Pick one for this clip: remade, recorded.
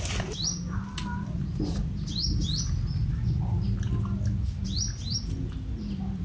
recorded